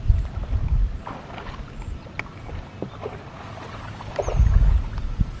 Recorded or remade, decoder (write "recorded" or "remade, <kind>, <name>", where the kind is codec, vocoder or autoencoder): recorded